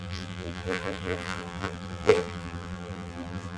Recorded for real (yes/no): no